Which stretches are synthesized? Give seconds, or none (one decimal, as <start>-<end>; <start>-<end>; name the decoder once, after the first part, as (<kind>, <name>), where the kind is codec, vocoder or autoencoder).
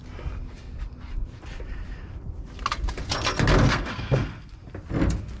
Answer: 3.7-4.5 (codec, SNAC)